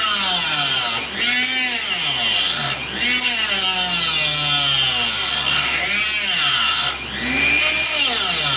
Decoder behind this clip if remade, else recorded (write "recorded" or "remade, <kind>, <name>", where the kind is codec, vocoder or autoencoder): recorded